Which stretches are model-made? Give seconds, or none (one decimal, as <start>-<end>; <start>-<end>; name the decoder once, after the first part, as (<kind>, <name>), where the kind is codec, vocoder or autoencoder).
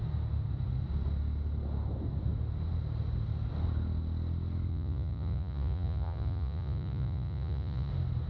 4.7-7.9 (vocoder, Vocos)